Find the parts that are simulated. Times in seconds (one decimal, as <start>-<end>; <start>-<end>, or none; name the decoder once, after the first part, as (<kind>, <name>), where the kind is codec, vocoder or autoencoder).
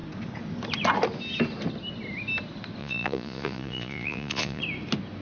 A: 2.8-4.6 (vocoder, Vocos)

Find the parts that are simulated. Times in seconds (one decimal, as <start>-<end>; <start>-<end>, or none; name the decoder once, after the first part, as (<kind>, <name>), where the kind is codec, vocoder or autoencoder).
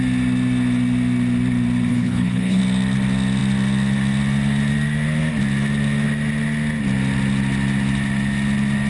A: 1.9-2.6 (codec, HILCodec)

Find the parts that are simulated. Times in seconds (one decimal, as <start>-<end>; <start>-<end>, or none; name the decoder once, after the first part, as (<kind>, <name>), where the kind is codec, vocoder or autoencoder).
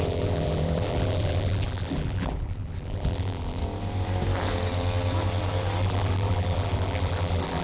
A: 0.0-3.6 (vocoder, BigVGAN v2); 5.8-7.6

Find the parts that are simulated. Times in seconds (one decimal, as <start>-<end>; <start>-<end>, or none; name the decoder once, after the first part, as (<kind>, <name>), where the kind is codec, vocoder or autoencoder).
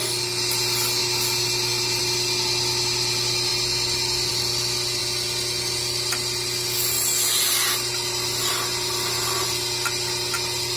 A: none